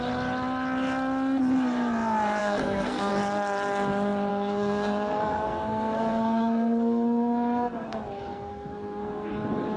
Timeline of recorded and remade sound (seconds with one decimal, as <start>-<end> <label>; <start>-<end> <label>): 0.0-2.4 recorded; 2.4-3.1 remade; 3.1-4.3 recorded; 4.3-9.3 remade; 9.3-9.8 recorded